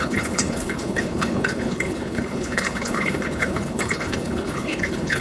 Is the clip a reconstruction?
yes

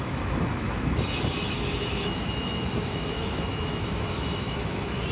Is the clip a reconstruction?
yes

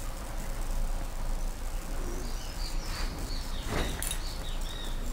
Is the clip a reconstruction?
no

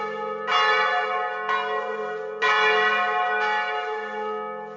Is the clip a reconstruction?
no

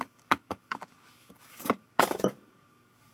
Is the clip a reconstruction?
yes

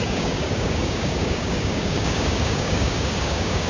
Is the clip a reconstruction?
yes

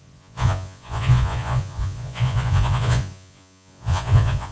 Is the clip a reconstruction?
yes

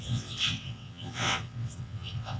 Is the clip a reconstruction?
yes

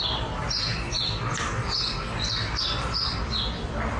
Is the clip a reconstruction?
no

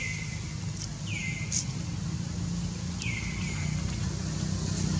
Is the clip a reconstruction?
no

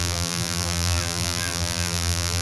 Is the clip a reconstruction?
yes